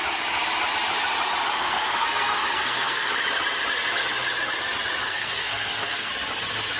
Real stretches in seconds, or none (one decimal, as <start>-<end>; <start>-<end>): 0.0-1.6; 3.1-5.0; 6.1-6.8